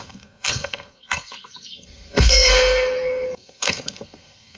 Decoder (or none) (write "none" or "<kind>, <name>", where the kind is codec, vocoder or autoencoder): codec, SNAC